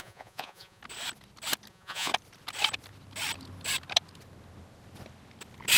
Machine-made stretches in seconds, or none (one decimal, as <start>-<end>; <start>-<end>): 0.0-0.8; 1.7-2.1